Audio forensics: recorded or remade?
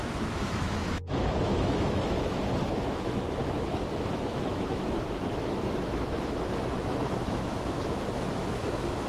remade